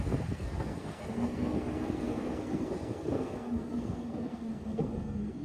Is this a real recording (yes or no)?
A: no